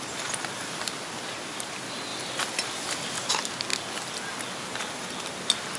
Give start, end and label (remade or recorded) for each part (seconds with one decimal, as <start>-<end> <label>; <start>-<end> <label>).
0.0-5.8 recorded